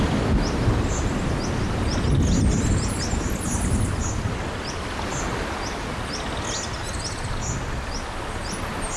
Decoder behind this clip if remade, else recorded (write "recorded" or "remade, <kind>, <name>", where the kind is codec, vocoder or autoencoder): recorded